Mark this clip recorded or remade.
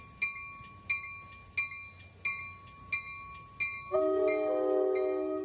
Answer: recorded